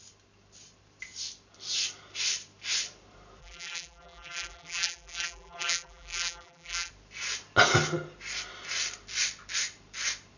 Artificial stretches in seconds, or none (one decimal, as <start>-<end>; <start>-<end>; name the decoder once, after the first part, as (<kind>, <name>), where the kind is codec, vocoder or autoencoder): 3.4-6.9 (vocoder, BigVGAN v2)